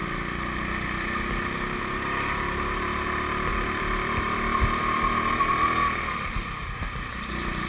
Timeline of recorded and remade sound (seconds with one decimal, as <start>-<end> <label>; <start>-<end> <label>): 0.0-3.5 recorded; 3.5-7.7 remade